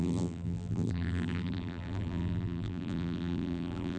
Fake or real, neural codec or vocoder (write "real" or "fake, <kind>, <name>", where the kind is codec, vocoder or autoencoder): fake, vocoder, BigVGAN v2